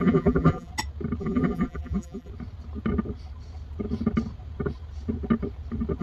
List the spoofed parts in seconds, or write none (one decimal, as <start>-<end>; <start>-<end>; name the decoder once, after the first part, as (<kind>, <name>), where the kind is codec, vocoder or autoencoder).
0.0-0.7 (vocoder, BigVGAN v2); 1.2-2.3